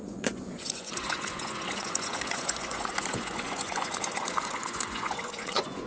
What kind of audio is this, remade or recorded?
remade